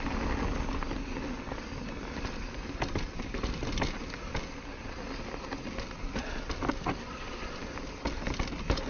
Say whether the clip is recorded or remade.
recorded